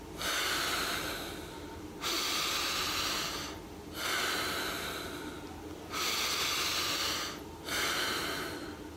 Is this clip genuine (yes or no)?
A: yes